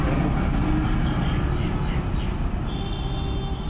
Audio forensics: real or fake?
real